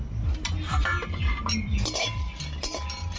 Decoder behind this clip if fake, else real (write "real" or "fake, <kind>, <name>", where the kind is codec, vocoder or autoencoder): real